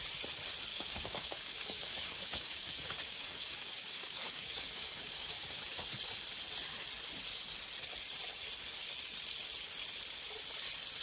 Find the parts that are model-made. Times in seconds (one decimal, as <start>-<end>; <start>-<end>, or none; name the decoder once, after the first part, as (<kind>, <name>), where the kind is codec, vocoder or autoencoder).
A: 0.7-5.6 (codec, DAC)